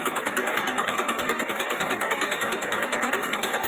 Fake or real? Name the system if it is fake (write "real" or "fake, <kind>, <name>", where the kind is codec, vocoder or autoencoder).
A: fake, codec, DAC